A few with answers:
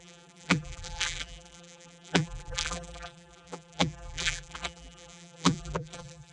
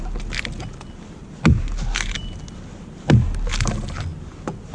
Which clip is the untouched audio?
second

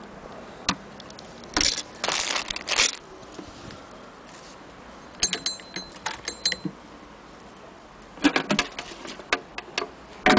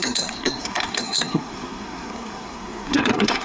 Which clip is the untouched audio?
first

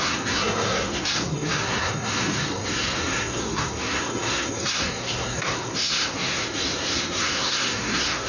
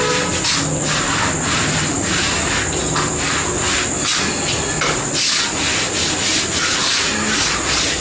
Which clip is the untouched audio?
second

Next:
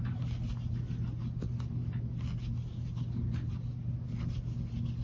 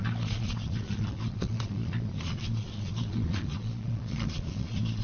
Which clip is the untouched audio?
first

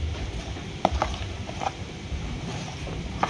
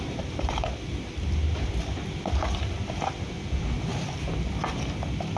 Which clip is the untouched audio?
second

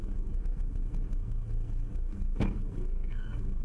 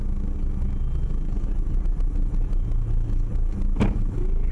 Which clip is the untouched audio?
second